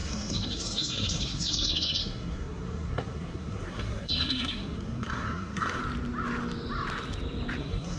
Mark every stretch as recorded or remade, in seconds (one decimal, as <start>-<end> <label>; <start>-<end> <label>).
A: 0.0-5.8 remade; 5.8-7.6 recorded; 7.6-8.0 remade